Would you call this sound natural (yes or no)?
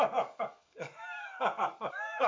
no